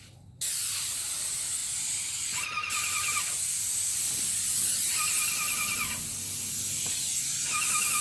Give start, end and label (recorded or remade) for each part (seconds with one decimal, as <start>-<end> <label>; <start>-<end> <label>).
0.0-8.0 recorded

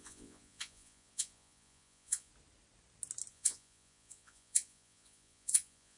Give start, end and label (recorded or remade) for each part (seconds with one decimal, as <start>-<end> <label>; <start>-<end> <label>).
0.0-2.3 remade; 2.3-3.3 recorded; 3.3-6.0 remade

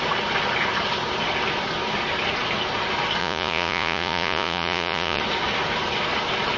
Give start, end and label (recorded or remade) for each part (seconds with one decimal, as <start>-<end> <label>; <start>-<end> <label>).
0.0-3.2 recorded; 3.2-5.2 remade; 5.2-6.6 recorded

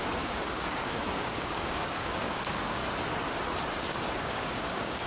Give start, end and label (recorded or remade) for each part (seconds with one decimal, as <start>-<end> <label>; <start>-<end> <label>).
0.0-2.8 remade; 2.8-4.2 recorded; 4.2-5.1 remade

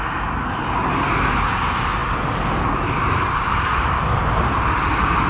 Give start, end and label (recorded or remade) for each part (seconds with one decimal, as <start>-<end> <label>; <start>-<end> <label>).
0.0-5.3 recorded

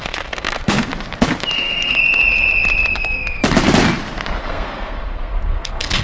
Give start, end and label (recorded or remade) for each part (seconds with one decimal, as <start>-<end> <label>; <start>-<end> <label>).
0.0-0.9 remade; 0.9-1.5 recorded; 1.5-2.0 remade; 2.0-2.9 recorded; 2.9-3.4 remade; 3.4-4.4 recorded; 4.4-6.0 remade